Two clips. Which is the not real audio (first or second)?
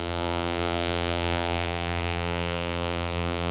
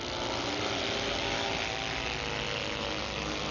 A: first